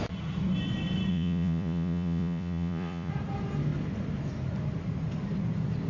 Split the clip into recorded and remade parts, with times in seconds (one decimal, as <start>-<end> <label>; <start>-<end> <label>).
0.0-1.1 recorded; 1.1-3.1 remade; 3.1-5.9 recorded